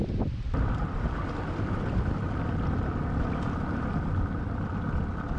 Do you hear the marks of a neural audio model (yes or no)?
no